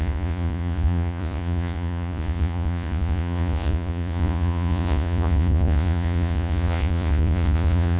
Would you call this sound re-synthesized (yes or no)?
yes